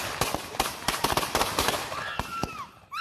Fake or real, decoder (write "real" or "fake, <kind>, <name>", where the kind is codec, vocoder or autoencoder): real